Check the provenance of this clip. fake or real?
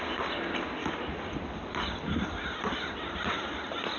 real